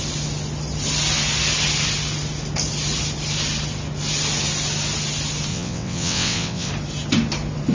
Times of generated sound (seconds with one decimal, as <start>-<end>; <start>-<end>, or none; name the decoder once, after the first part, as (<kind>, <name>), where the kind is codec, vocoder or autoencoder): 5.5-6.7 (vocoder, WaveNeXt)